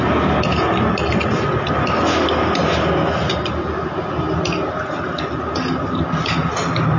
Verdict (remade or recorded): recorded